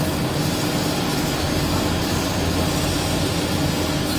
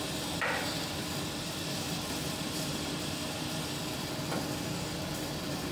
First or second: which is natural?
first